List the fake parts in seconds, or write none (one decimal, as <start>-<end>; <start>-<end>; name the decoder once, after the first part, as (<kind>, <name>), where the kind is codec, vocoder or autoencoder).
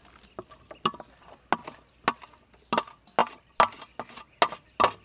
none